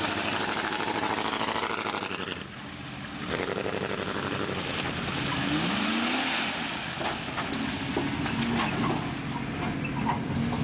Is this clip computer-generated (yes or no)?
no